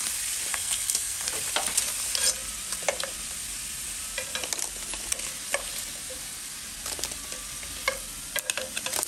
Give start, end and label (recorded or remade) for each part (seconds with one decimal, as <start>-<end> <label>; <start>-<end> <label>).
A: 0.0-0.5 recorded; 0.5-1.3 remade; 1.3-9.1 recorded